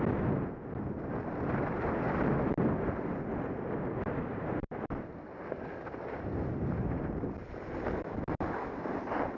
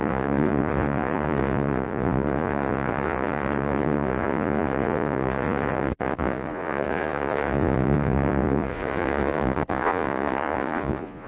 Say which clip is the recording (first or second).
first